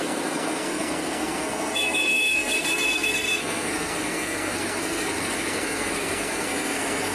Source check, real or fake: fake